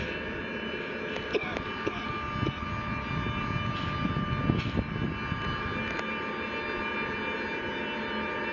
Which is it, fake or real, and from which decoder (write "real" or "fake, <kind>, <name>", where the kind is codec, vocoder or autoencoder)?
real